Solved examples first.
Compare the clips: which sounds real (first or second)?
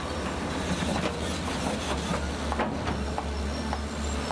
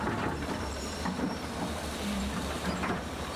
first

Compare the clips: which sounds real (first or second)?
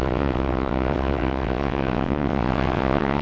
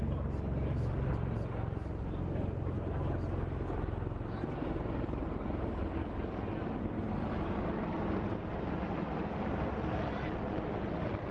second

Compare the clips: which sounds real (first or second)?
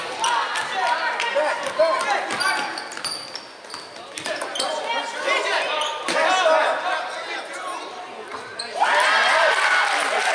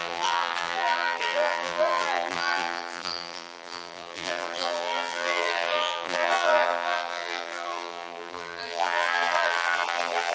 first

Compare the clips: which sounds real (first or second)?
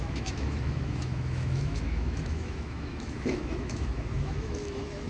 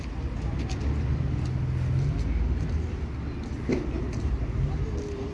second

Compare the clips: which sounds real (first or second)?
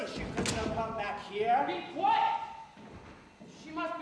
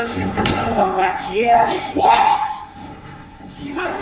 first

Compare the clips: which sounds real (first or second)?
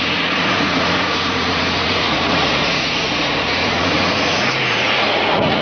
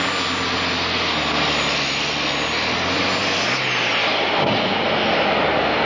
second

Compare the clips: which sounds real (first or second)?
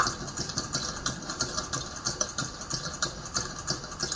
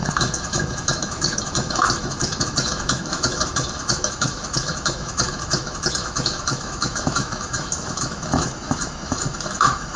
first